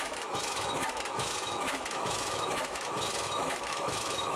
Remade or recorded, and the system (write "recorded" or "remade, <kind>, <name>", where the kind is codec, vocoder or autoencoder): remade, autoencoder, DAC-VAE